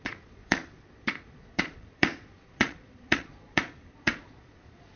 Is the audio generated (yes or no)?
yes